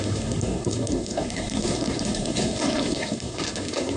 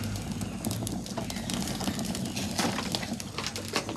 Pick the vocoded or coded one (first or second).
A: first